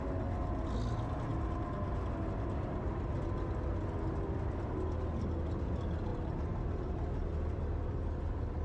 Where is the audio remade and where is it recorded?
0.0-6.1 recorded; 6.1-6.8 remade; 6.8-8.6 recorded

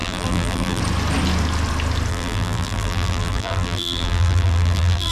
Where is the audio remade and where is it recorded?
0.0-0.8 remade; 0.8-2.1 recorded; 2.1-5.1 remade